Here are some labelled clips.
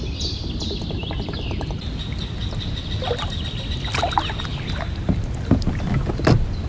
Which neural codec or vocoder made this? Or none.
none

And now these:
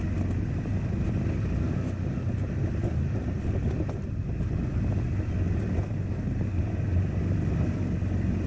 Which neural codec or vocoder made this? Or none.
none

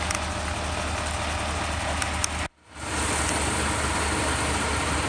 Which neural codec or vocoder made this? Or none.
none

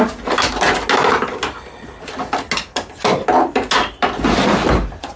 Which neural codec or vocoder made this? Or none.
none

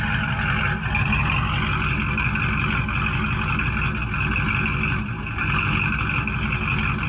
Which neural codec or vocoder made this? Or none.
none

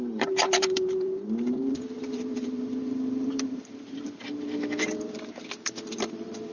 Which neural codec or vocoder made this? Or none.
vocoder, BigVGAN v2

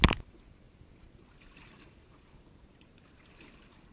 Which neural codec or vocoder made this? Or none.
none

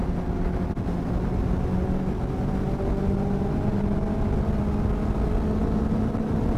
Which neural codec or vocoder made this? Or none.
none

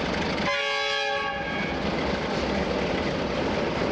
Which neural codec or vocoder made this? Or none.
none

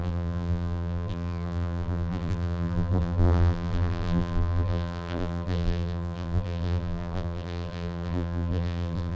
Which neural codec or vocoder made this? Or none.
vocoder, BigVGAN v2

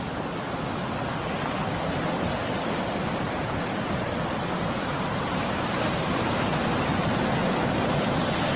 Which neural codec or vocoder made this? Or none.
none